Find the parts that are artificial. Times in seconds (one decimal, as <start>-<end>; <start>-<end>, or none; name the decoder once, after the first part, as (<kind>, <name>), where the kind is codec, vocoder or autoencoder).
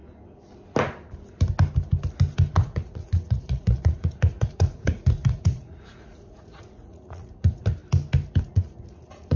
2.5-7.8 (vocoder, Vocos); 8.4-9.4